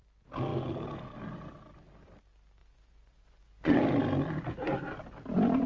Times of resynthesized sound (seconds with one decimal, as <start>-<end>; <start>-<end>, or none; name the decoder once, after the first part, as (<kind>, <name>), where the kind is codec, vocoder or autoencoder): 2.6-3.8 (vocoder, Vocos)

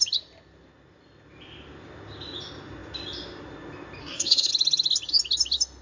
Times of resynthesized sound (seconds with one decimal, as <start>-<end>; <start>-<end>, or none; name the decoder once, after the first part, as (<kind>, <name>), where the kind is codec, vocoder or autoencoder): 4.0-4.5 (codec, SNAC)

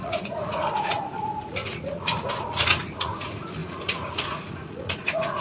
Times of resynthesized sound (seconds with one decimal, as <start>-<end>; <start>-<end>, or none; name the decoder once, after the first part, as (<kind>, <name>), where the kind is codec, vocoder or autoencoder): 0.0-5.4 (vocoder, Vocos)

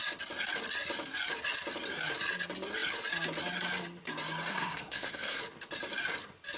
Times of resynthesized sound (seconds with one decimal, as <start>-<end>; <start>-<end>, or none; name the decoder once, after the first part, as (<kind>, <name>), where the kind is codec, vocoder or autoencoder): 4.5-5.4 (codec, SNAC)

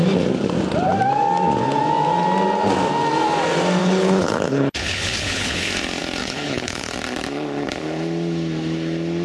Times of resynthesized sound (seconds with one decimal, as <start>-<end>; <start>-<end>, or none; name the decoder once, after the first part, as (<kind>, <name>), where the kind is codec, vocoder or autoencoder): 3.8-5.7 (codec, HILCodec); 6.2-6.9